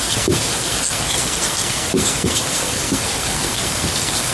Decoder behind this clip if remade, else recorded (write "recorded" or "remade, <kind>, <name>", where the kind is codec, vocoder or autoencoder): remade, codec, SNAC